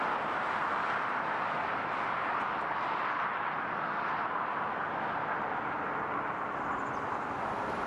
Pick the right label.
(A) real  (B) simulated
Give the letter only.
A